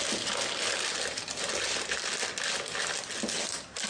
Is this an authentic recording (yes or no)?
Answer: yes